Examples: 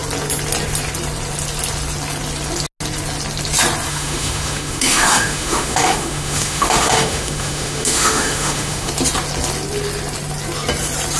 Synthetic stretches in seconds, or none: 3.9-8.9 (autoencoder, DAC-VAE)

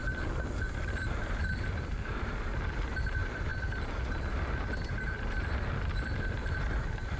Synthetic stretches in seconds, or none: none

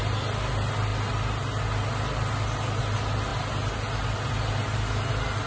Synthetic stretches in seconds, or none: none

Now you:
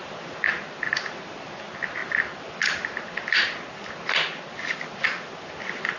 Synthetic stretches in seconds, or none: none

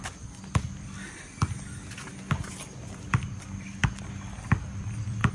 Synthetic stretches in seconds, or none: none